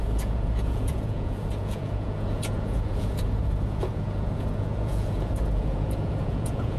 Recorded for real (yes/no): no